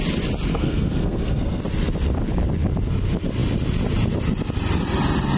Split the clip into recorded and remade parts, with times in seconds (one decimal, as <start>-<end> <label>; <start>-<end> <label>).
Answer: 0.0-0.5 recorded; 0.5-1.6 remade; 1.6-5.4 recorded